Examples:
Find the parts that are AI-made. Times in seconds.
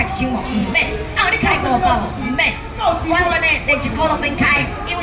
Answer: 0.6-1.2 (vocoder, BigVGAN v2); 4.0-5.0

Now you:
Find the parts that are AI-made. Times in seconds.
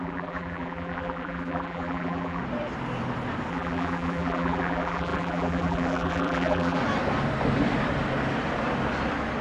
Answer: 0.0-2.4 (vocoder, BigVGAN v2); 3.5-6.8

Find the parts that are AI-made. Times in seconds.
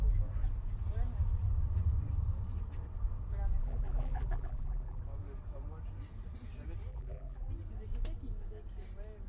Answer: 3.6-5.0 (vocoder, BigVGAN v2); 6.9-7.5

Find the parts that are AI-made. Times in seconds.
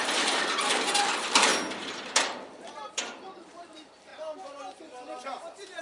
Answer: 0.0-1.5 (vocoder, BigVGAN v2); 2.4-4.1; 4.8-5.8